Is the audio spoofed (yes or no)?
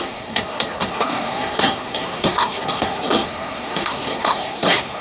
yes